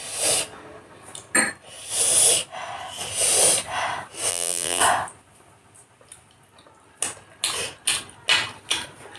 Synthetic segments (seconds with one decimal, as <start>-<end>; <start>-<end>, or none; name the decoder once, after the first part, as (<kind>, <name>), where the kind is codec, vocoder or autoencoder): 4.3-4.8 (vocoder, BigVGAN v2)